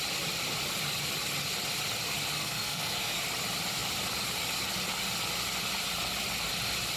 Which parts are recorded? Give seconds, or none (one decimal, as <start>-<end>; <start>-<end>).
0.0-2.4; 3.2-7.0